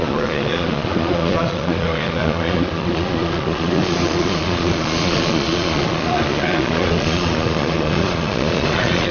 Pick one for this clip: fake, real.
fake